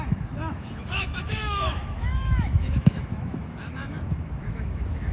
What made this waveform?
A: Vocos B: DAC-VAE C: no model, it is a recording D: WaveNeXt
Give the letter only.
B